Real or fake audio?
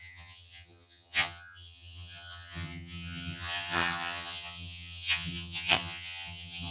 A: fake